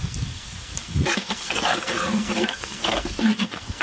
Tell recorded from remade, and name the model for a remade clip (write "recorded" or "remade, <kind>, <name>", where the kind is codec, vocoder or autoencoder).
remade, codec, SNAC